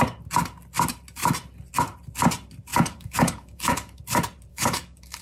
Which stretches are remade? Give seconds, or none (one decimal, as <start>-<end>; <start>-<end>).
2.7-4.0; 4.5-5.2